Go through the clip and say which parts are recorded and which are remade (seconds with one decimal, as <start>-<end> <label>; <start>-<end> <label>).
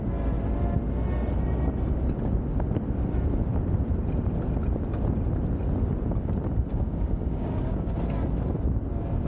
0.0-6.7 recorded; 6.7-7.9 remade; 7.9-9.3 recorded